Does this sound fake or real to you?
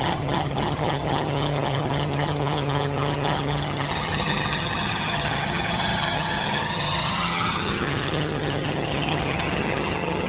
fake